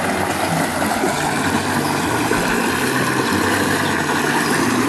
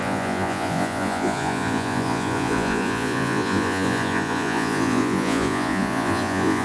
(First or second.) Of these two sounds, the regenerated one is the second